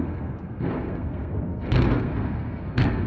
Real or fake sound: fake